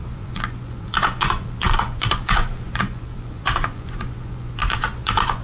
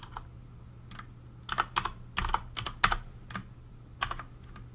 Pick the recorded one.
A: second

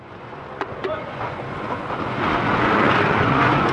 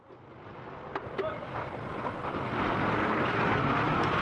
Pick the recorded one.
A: second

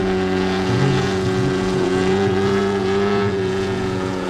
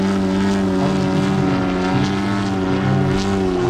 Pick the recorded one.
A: second